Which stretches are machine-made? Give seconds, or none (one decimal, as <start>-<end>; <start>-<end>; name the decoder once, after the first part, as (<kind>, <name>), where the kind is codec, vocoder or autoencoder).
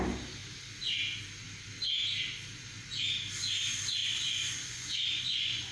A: 4.0-5.7 (vocoder, Vocos)